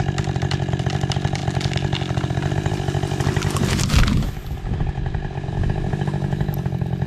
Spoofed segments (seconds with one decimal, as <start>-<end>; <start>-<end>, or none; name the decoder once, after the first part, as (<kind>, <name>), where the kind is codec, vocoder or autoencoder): none